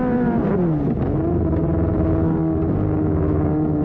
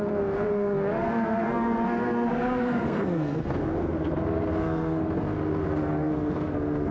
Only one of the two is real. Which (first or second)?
first